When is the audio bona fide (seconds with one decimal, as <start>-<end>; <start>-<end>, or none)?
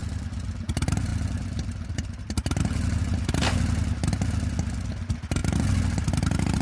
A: 0.5-1.1; 3.0-6.6